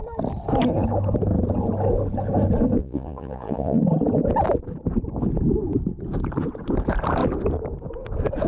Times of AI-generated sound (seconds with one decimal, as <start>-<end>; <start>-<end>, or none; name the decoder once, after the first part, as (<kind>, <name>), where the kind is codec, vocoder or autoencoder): 2.8-3.8 (vocoder, Vocos)